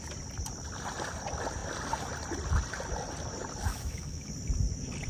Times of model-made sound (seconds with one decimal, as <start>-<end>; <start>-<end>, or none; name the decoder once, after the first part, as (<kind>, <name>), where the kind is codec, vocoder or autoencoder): 3.7-4.3 (autoencoder, DAC-VAE)